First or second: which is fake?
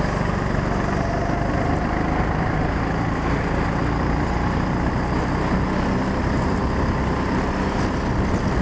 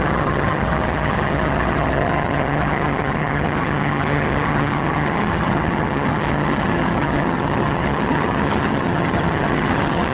second